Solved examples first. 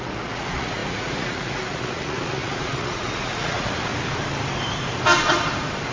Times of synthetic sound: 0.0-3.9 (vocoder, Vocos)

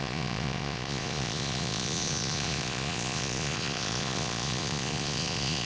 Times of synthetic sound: 0.0-5.6 (vocoder, Vocos)

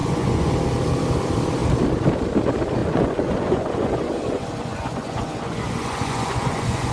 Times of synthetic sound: 0.0-0.5 (vocoder, Vocos); 2.8-6.9